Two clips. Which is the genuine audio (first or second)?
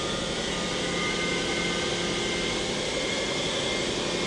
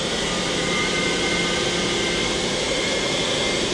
first